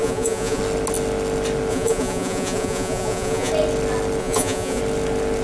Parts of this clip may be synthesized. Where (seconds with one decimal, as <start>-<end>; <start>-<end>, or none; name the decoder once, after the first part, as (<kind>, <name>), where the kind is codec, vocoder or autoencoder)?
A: 0.0-0.6 (vocoder, Vocos); 1.7-3.5; 4.2-4.8